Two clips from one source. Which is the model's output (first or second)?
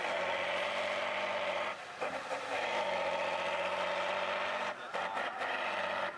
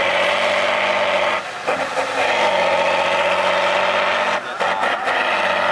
first